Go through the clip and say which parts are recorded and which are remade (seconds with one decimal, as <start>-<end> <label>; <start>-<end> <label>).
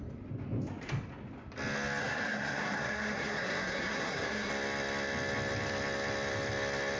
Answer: 0.0-2.0 recorded; 2.0-4.5 remade; 4.5-7.0 recorded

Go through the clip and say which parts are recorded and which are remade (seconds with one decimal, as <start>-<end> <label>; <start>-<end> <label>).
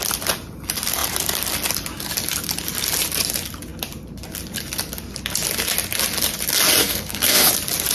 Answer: 0.0-6.8 recorded; 6.8-7.5 remade; 7.5-7.9 recorded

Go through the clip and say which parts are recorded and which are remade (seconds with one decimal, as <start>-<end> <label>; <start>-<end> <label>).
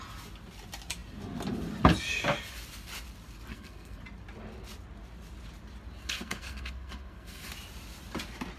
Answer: 0.0-3.5 recorded; 3.5-4.0 remade; 4.0-6.0 recorded; 6.0-7.5 remade; 7.5-8.6 recorded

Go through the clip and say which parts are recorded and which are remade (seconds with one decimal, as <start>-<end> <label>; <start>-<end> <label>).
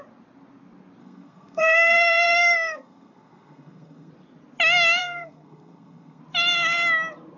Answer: 0.0-1.0 recorded; 1.0-4.1 remade; 4.1-5.0 recorded; 5.0-6.2 remade; 6.2-7.4 recorded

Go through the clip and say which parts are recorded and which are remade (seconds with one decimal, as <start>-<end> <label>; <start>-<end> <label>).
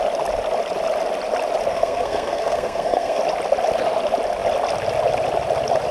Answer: 0.0-1.7 recorded; 1.7-3.2 remade; 3.2-5.9 recorded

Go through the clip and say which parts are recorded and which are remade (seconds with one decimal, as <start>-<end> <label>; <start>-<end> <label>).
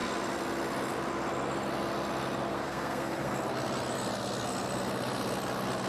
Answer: 0.0-2.5 recorded; 2.5-3.3 remade; 3.3-5.9 recorded